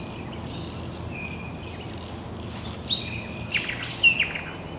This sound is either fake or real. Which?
real